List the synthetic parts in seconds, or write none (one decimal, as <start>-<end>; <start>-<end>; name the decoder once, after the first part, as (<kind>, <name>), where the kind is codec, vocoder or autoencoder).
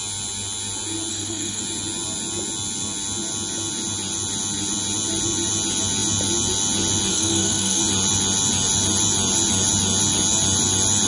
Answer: 1.1-1.6 (codec, SNAC); 7.1-7.8